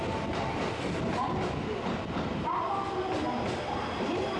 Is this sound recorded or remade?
recorded